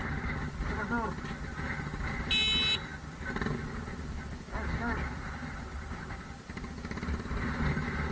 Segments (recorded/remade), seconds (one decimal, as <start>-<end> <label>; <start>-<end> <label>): 0.0-8.1 recorded